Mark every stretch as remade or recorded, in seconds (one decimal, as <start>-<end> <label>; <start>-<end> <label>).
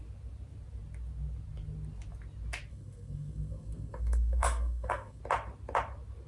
0.0-2.7 recorded; 2.7-5.2 remade; 5.2-6.3 recorded